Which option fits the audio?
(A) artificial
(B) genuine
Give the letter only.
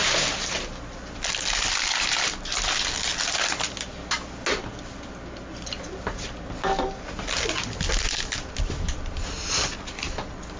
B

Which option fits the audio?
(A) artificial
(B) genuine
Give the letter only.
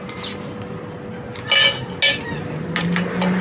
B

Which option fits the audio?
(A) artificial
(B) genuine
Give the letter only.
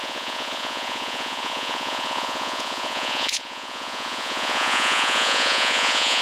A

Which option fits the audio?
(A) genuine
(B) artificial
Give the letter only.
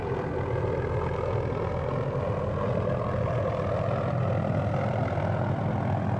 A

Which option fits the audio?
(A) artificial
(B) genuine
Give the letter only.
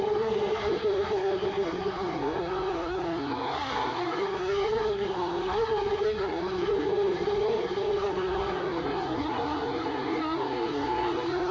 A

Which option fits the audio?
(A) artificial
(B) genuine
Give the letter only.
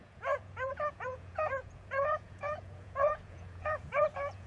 A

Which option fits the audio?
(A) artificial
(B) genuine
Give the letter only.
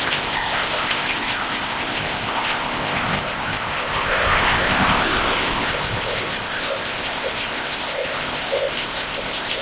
A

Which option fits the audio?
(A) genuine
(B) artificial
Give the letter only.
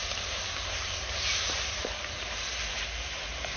B